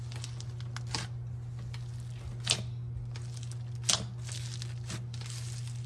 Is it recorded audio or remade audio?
recorded